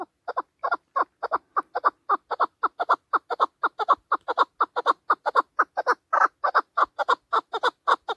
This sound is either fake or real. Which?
real